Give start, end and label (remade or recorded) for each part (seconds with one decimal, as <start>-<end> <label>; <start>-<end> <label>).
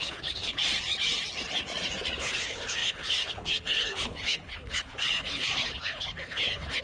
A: 0.0-0.6 remade; 0.6-2.2 recorded; 2.2-6.8 remade